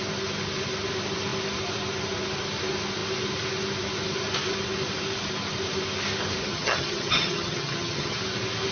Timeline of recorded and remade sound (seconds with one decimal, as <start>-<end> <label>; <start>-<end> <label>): 0.0-6.4 recorded; 6.4-8.2 remade; 8.2-8.7 recorded